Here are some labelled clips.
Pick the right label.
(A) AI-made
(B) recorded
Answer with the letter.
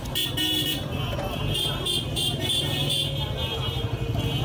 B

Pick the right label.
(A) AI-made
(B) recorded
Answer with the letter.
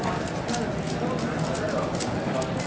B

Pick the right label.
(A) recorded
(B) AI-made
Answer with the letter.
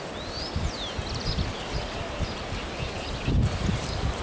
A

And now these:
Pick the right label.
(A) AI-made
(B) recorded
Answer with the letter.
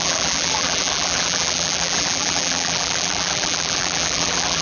A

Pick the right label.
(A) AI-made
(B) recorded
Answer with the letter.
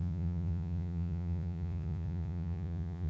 A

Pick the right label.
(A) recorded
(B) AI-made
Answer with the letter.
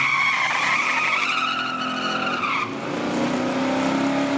A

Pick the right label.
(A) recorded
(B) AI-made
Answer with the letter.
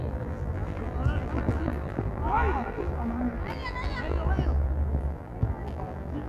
B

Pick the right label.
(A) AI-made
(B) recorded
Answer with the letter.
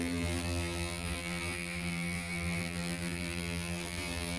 A